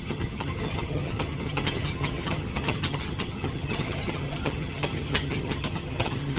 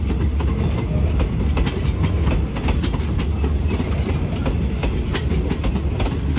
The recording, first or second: second